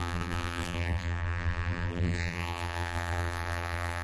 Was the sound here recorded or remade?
remade